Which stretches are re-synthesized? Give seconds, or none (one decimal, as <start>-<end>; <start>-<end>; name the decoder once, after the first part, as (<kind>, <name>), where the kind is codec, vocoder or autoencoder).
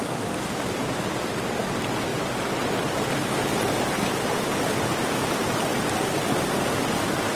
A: 0.0-2.1 (vocoder, BigVGAN v2); 3.1-3.5; 4.3-5.7; 6.7-7.4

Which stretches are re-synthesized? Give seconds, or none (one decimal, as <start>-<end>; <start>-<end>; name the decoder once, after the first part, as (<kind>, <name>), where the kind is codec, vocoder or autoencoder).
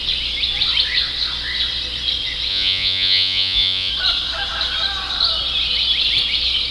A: 2.5-3.9 (vocoder, Vocos)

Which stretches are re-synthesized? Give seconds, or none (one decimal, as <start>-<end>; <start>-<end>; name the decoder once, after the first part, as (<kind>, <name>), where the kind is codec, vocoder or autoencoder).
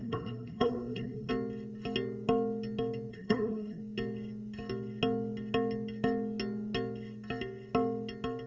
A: 0.0-1.3 (codec, SNAC); 3.1-3.8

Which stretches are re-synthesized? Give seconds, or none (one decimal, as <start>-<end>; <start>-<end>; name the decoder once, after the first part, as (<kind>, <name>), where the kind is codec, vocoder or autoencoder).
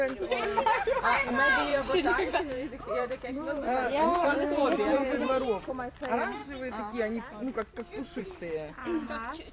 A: 1.7-5.7 (vocoder, Vocos)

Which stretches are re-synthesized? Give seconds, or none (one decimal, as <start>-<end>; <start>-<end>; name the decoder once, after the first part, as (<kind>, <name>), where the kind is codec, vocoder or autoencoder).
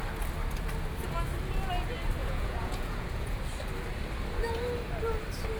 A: 2.2-3.4 (vocoder, Vocos)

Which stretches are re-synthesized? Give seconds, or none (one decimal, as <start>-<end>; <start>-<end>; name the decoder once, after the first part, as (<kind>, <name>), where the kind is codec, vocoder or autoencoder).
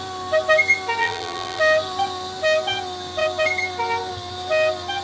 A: 1.0-1.6 (vocoder, BigVGAN v2)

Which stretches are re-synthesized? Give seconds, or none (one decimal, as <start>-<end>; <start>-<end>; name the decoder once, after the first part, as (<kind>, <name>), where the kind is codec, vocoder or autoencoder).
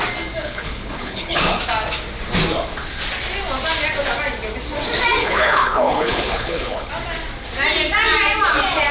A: 0.4-1.6 (codec, HILCodec); 5.2-6.9